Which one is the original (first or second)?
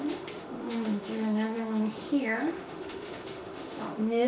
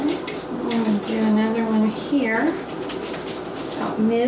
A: second